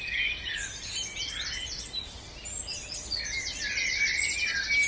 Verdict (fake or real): real